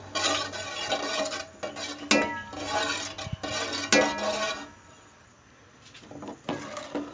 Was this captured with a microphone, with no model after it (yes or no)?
yes